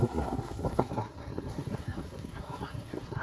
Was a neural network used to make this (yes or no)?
yes